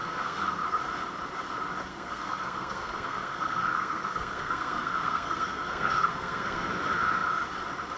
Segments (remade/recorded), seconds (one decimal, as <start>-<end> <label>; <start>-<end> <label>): 0.0-0.8 remade; 0.8-1.9 recorded; 1.9-6.7 remade; 6.7-8.0 recorded